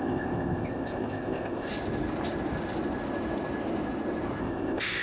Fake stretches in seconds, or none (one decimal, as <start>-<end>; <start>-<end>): 0.0-1.7; 4.4-5.0